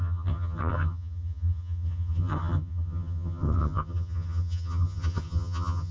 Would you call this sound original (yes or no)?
no